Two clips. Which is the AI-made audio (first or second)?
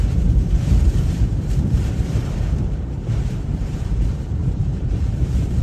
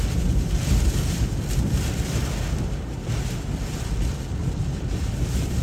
first